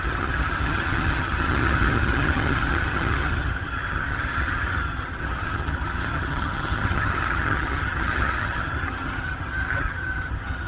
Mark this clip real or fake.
fake